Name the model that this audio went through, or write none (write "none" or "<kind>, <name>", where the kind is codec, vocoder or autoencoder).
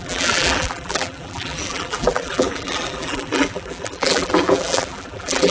vocoder, BigVGAN v2